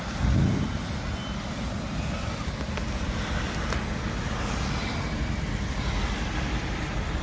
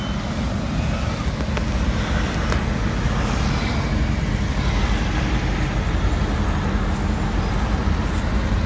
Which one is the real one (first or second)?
second